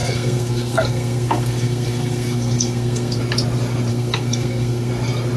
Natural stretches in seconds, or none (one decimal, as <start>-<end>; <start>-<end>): 3.2-3.9; 4.9-5.4